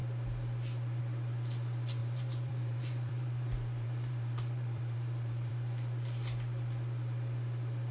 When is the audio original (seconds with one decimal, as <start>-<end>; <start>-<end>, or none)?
0.0-2.0; 5.5-7.9